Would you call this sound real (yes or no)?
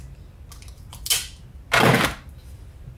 yes